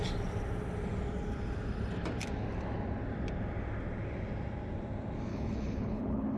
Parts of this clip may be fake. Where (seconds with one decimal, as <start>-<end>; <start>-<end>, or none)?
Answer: 5.3-6.4